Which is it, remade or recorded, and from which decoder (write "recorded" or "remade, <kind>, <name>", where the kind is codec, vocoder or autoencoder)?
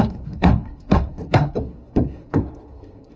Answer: remade, codec, SNAC